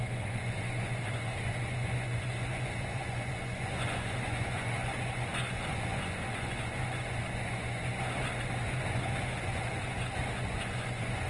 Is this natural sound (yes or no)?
no